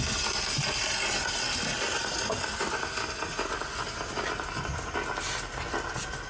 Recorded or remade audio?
recorded